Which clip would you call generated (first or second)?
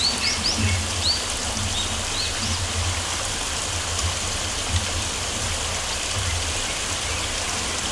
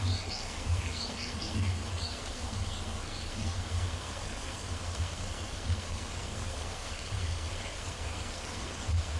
second